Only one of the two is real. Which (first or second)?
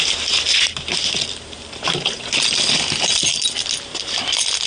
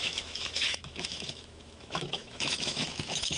first